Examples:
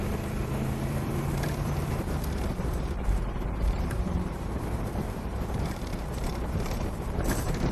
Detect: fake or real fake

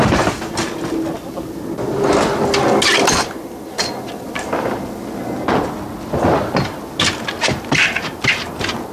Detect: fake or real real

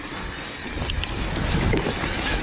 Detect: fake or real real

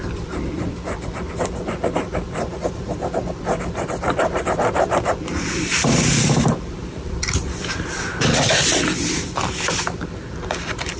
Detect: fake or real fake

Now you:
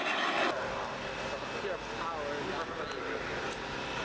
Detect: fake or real real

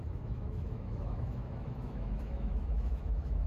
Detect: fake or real fake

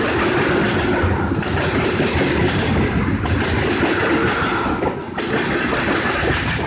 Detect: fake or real real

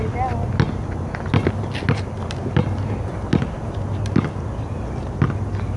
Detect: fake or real real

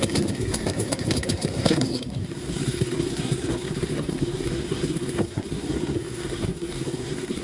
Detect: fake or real fake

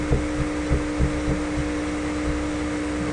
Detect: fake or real real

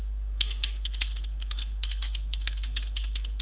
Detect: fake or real fake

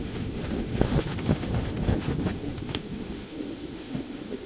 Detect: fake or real fake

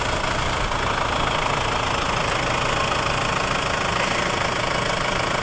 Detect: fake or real real